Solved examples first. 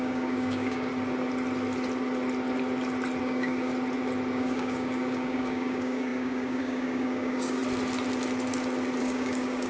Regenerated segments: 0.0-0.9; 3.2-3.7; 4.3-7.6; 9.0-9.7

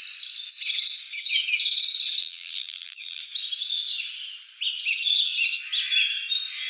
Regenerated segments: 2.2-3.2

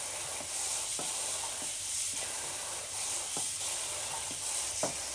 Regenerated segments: 0.9-3.4

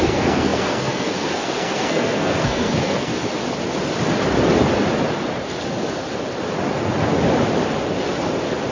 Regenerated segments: 0.0-3.1